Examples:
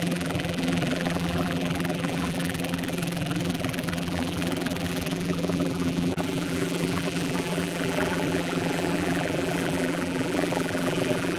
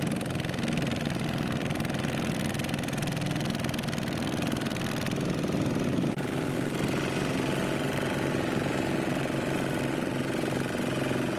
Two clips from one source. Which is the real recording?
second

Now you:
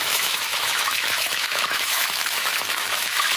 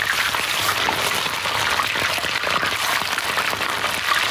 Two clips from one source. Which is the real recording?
second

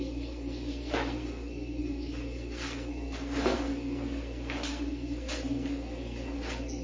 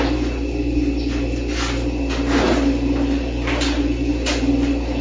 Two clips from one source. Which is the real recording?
second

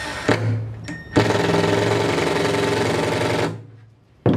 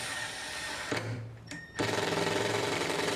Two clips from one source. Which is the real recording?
first